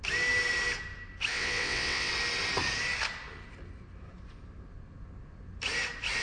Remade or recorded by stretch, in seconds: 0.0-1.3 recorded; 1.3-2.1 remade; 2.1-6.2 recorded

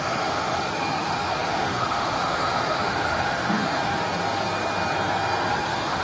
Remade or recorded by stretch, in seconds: 0.0-4.0 remade; 4.0-5.5 recorded; 5.5-6.0 remade

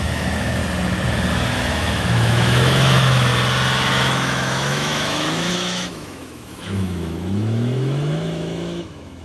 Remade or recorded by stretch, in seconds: 0.0-0.6 remade; 0.6-1.3 recorded; 1.3-3.3 remade; 3.3-3.9 recorded; 3.9-9.2 remade

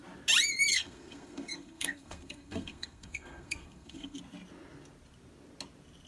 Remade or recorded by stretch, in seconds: 0.0-0.7 recorded; 0.7-4.2 remade; 4.2-6.1 recorded